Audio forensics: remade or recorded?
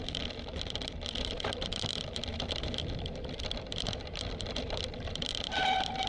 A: remade